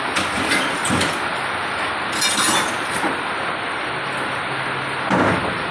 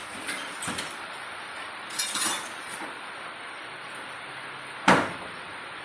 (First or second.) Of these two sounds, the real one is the first